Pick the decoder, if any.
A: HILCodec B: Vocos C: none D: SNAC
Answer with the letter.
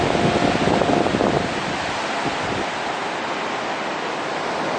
C